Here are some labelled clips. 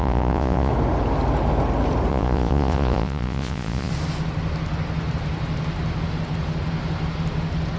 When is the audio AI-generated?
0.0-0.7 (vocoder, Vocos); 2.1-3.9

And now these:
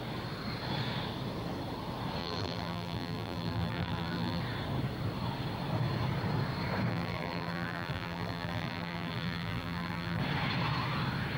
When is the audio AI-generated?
2.2-4.4 (vocoder, BigVGAN v2); 6.9-10.2

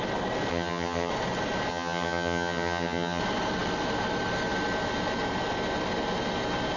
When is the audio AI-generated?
0.5-1.1 (vocoder, HiFi-GAN); 1.7-3.2

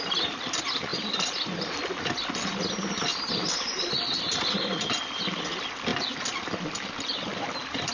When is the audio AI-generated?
none

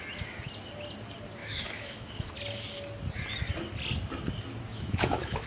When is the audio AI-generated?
1.4-2.3 (autoencoder, DAC-VAE); 4.7-5.5

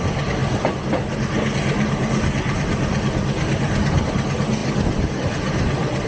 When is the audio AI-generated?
none